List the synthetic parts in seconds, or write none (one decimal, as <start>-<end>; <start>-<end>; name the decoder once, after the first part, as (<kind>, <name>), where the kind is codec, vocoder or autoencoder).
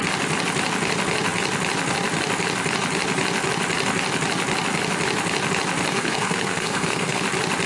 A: 5.9-7.2 (codec, SNAC)